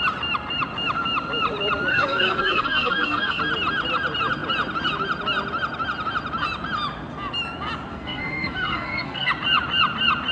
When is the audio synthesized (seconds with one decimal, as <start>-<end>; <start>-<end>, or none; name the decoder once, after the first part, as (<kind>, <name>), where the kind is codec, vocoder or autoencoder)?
1.9-3.4 (codec, SNAC); 7.9-9.3